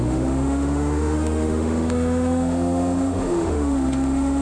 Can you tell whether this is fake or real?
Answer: fake